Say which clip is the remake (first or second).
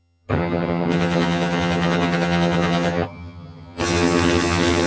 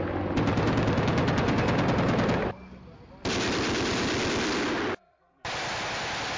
first